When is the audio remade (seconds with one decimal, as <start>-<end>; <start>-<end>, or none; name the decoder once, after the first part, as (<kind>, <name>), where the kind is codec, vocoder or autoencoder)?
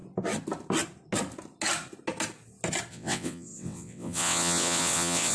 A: 2.9-5.3 (vocoder, WaveNeXt)